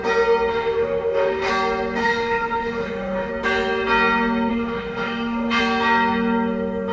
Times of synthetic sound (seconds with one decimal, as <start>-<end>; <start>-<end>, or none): 0.5-1.5; 2.0-3.3; 4.5-5.6